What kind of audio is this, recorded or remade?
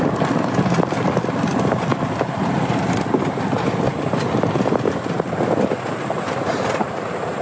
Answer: recorded